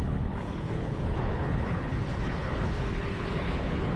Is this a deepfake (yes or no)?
yes